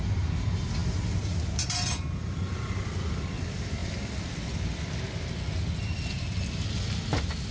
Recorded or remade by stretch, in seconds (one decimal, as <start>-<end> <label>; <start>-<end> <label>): 0.0-7.5 recorded